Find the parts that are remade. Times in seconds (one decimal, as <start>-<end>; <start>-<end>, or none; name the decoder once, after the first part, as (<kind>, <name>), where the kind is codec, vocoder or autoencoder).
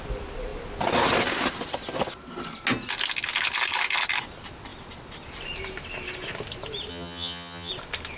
6.9-7.7 (vocoder, HiFi-GAN)